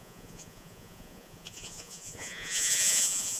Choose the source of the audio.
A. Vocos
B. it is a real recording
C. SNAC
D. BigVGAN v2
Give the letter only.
A